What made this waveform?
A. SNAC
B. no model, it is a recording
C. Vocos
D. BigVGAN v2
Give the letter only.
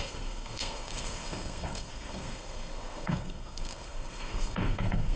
A